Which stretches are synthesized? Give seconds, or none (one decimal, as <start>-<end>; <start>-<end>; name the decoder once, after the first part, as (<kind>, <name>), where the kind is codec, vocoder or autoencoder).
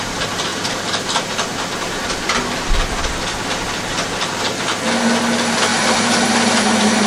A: 0.5-1.0 (vocoder, BigVGAN v2); 3.9-4.7; 5.7-6.4